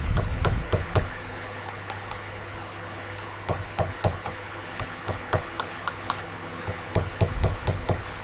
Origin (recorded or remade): remade